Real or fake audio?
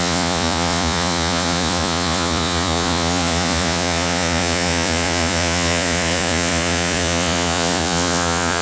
fake